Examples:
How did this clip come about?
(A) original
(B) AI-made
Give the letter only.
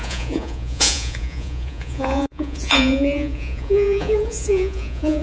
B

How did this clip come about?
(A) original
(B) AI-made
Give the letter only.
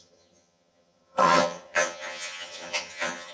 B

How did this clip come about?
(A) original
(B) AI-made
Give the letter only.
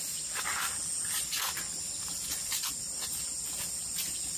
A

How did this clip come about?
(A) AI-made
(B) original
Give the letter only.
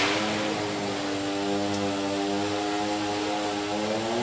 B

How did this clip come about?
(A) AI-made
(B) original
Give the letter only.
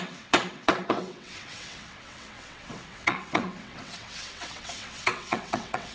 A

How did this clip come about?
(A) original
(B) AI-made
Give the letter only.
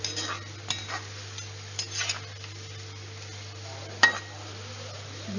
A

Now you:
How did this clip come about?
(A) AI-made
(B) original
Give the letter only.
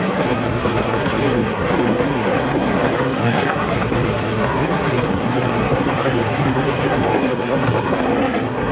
A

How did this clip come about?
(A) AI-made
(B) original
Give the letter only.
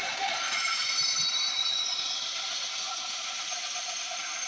B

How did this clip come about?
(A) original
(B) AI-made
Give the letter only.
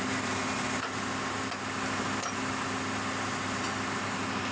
A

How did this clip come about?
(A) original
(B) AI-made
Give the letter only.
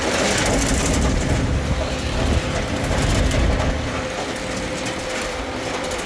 A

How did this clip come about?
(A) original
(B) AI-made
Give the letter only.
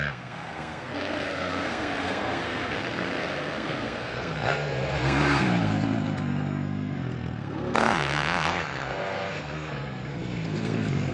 B